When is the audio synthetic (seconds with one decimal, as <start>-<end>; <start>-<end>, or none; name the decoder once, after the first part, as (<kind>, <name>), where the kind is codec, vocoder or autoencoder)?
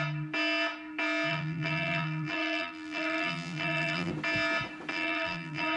1.3-4.1 (vocoder, BigVGAN v2); 4.9-5.8